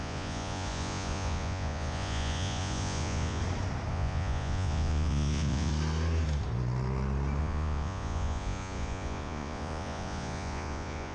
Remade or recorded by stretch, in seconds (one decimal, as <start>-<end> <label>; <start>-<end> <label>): 0.0-3.4 remade; 3.4-3.9 recorded; 3.9-5.7 remade; 5.7-7.4 recorded; 7.4-11.1 remade